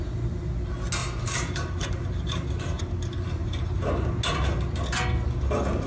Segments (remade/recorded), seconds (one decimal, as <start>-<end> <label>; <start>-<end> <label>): 0.0-1.0 recorded; 1.0-2.8 remade; 2.8-3.4 recorded; 3.4-4.2 remade; 4.2-5.9 recorded